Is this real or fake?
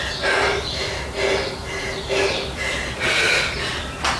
real